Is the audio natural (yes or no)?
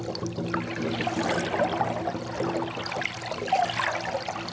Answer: yes